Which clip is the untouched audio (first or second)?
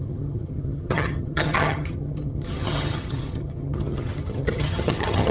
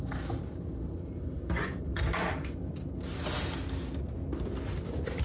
second